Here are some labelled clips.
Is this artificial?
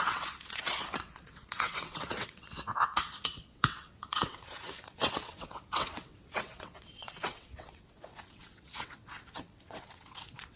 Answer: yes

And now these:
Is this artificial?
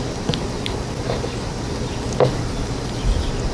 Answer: no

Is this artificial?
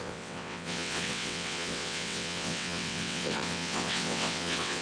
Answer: yes